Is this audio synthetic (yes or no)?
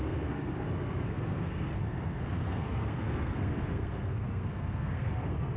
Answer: yes